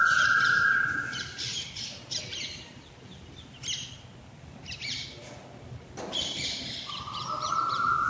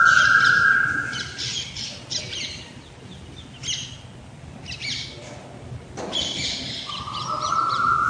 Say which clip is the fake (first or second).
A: first